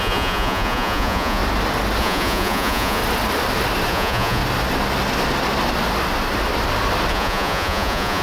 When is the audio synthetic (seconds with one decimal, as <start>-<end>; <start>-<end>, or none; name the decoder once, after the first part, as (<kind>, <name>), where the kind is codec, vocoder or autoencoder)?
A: 0.0-1.4 (vocoder, Vocos); 2.0-3.0; 3.9-4.4; 7.1-8.2